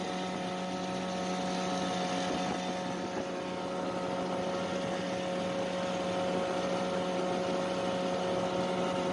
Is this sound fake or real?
real